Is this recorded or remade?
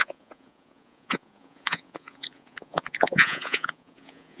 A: remade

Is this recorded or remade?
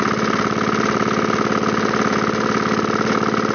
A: recorded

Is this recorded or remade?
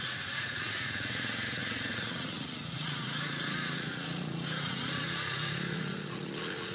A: remade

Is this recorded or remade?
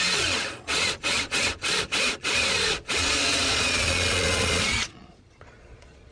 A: remade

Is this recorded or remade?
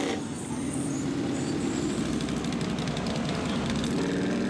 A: recorded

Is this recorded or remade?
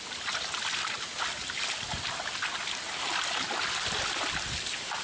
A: recorded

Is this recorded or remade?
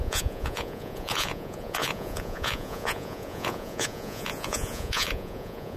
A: remade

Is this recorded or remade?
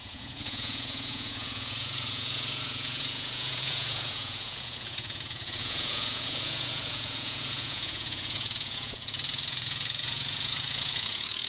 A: remade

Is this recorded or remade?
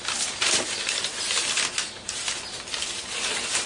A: recorded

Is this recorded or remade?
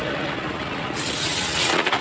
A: remade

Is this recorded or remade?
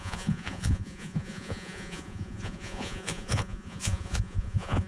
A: remade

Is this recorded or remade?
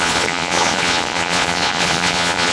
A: remade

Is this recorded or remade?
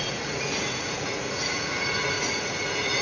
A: remade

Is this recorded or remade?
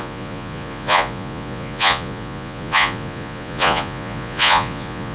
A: remade